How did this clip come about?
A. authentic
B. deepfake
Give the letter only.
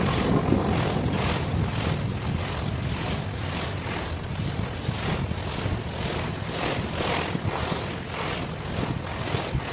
A